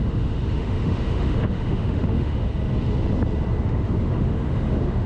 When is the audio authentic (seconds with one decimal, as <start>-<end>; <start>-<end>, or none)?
2.5-3.6

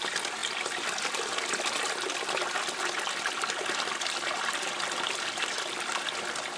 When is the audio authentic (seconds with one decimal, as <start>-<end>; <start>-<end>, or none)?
0.0-6.6

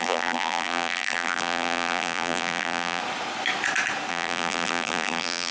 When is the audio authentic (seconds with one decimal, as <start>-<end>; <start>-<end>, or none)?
3.0-4.1

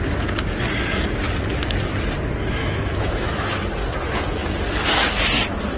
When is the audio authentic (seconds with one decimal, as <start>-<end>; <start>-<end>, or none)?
0.0-2.6; 3.3-5.8

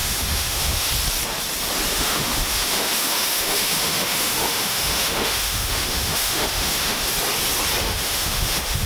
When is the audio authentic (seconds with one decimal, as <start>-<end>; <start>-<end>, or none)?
0.9-1.9; 7.1-7.8

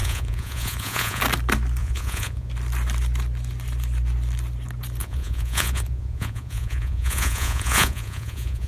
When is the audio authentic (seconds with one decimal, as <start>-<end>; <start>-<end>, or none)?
1.2-1.8; 2.5-5.0